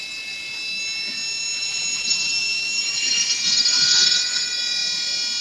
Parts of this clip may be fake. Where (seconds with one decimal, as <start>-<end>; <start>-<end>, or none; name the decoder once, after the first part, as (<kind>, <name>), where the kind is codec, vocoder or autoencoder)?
none